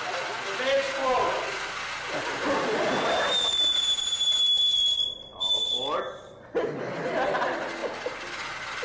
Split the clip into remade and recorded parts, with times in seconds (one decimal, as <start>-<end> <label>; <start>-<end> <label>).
0.0-8.8 recorded